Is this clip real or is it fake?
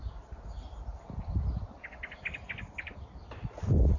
fake